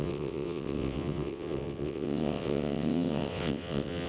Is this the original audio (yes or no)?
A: no